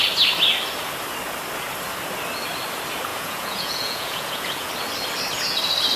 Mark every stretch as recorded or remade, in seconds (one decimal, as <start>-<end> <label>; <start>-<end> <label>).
0.0-3.1 recorded; 3.1-4.7 remade; 4.7-6.0 recorded